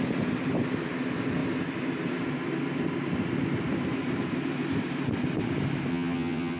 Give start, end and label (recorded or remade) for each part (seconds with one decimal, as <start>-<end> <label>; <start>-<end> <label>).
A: 0.0-5.9 recorded; 5.9-6.6 remade